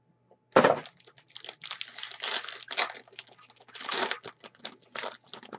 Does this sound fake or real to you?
real